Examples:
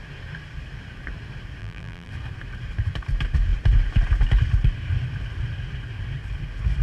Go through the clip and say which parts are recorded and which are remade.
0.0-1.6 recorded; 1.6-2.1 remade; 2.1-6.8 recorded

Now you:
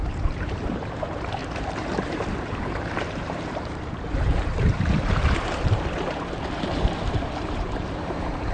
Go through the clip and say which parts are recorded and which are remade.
0.0-8.5 remade

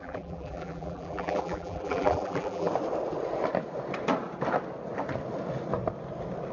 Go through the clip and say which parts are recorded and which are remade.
0.0-2.7 remade; 2.7-6.5 recorded

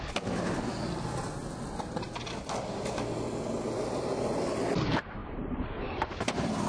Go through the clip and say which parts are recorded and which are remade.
0.0-5.2 recorded; 5.2-6.7 remade